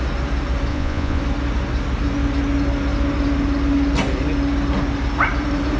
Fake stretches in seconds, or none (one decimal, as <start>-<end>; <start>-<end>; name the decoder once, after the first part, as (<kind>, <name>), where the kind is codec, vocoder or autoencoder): 0.7-1.2 (vocoder, Vocos)